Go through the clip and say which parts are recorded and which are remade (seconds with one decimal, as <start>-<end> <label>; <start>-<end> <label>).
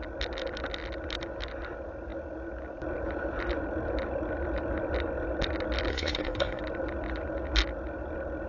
0.0-5.9 recorded; 5.9-6.6 remade; 6.6-8.5 recorded